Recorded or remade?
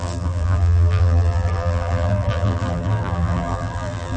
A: remade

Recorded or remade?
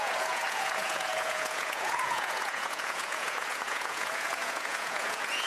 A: remade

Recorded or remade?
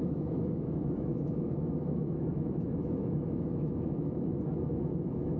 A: remade